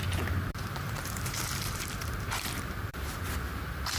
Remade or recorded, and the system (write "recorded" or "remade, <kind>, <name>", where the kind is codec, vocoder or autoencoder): remade, vocoder, BigVGAN v2